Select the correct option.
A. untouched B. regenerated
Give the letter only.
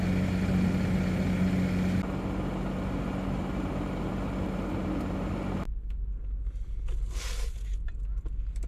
A